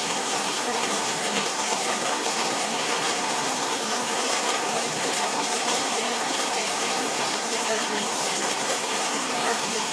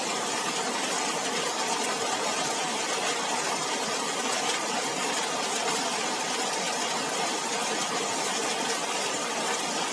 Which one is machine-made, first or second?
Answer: first